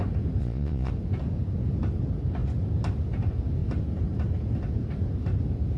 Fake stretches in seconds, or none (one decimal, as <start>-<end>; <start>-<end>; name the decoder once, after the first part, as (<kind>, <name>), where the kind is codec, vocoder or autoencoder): 0.4-0.9 (vocoder, Vocos)